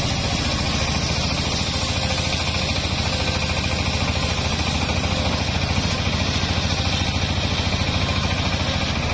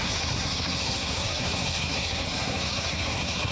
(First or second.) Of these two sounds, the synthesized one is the second